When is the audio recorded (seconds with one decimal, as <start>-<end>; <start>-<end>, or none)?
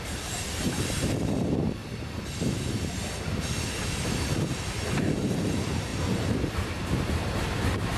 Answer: 1.8-5.0